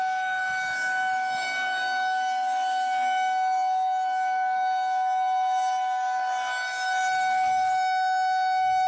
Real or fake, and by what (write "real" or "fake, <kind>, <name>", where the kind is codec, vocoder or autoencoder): fake, autoencoder, DAC-VAE